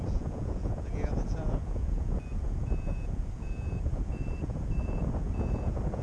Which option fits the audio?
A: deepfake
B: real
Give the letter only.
A